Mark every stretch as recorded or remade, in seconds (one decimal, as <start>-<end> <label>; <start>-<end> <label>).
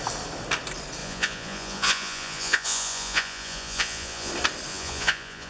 0.0-1.0 recorded; 1.0-4.3 remade; 4.3-4.7 recorded; 4.7-5.5 remade